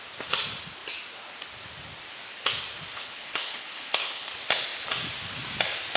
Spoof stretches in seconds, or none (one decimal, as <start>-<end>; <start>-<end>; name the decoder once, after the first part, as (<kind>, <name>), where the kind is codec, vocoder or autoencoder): 2.9-4.3 (codec, HILCodec)